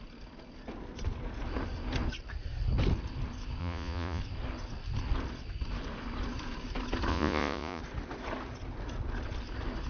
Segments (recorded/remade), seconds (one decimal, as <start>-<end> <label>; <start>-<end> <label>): 0.0-3.6 recorded; 3.6-4.2 remade; 4.2-7.1 recorded; 7.1-7.8 remade; 7.8-9.9 recorded